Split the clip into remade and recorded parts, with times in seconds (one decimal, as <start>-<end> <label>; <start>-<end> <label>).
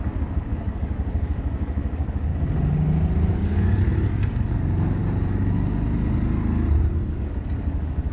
0.0-2.3 remade; 2.3-3.3 recorded; 3.3-3.9 remade; 3.9-4.5 recorded; 4.5-5.0 remade; 5.0-6.9 recorded; 6.9-8.1 remade